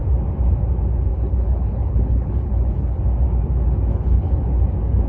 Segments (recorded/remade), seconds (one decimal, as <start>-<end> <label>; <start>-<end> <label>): 0.0-1.1 recorded; 1.1-3.0 remade; 3.0-3.9 recorded; 3.9-4.5 remade; 4.5-5.1 recorded